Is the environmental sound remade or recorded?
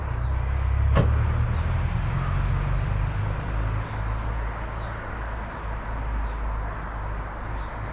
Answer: recorded